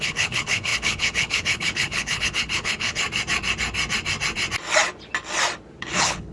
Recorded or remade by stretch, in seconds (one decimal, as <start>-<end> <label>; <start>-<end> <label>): 0.0-3.0 remade; 3.0-5.8 recorded; 5.8-6.3 remade